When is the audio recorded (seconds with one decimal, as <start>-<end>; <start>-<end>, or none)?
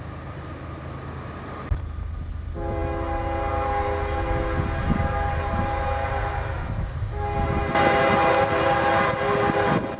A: 0.0-10.0